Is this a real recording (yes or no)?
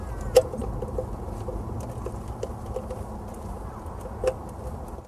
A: yes